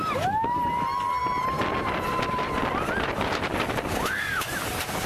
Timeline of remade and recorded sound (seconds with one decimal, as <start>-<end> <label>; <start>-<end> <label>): 0.0-5.1 recorded